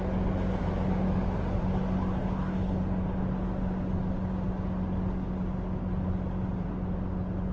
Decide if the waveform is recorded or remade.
recorded